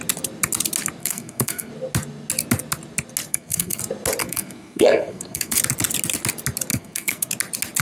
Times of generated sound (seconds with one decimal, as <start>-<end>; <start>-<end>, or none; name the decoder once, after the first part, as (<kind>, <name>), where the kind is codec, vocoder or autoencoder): 1.0-1.7 (codec, SNAC); 3.3-3.8; 4.2-5.6; 6.7-7.3